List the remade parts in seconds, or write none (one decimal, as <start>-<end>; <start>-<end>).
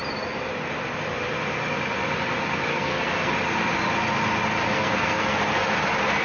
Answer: 2.7-3.3; 4.7-5.4